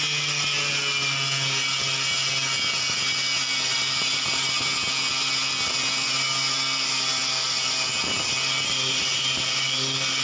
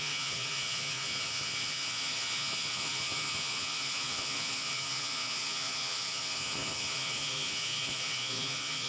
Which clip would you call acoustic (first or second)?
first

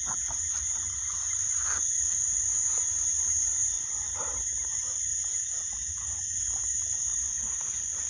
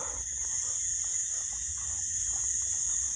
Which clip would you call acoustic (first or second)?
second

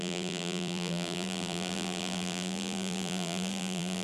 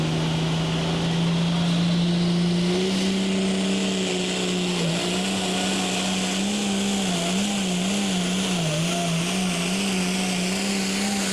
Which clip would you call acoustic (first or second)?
second